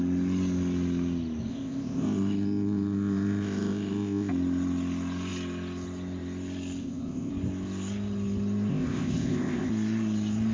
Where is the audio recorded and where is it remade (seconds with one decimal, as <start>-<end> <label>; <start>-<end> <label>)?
0.0-1.5 recorded; 1.5-4.3 remade; 4.3-6.8 recorded; 6.8-7.3 remade; 7.3-8.7 recorded; 8.7-9.7 remade; 9.7-10.5 recorded